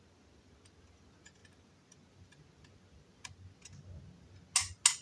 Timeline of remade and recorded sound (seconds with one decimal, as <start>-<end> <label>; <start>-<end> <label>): 0.0-5.0 recorded